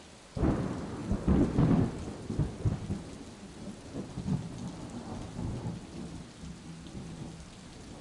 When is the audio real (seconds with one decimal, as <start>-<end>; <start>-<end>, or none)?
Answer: 0.0-8.0